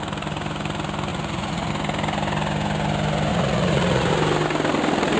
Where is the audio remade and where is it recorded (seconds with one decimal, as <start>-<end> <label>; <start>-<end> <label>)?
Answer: 0.0-1.1 recorded; 1.1-1.7 remade; 1.7-3.3 recorded; 3.3-4.1 remade; 4.1-5.2 recorded